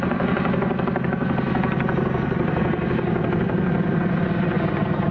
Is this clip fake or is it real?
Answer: real